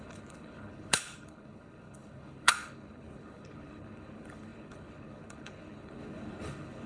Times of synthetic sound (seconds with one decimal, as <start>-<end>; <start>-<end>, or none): 0.0-6.9